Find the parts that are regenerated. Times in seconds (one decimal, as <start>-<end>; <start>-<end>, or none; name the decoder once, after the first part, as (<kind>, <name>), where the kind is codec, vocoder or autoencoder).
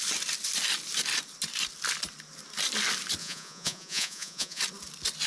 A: 3.2-4.6 (vocoder, Vocos)